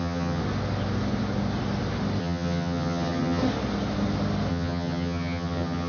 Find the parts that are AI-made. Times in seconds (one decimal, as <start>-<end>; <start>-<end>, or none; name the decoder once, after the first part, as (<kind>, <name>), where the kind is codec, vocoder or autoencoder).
0.0-0.4 (vocoder, HiFi-GAN); 2.2-3.4; 4.5-5.9